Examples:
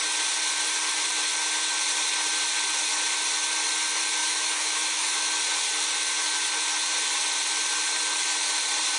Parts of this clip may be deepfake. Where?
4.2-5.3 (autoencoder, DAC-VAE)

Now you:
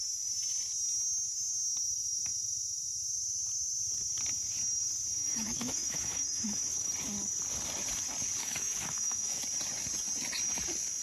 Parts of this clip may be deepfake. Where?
5.2-6.9 (autoencoder, DAC-VAE); 8.4-9.4

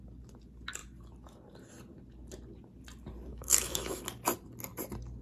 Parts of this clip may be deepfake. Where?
3.3-4.0 (autoencoder, DAC-VAE)

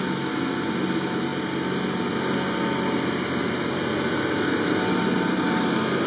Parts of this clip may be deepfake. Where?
none

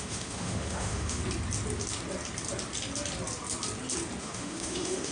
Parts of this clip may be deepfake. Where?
0.0-1.2 (autoencoder, DAC-VAE); 4.2-5.1